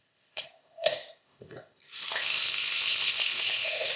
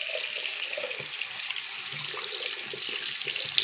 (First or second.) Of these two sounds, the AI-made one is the first